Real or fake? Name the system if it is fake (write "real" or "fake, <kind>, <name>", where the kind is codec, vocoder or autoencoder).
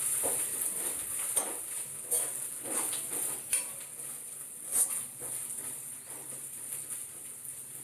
real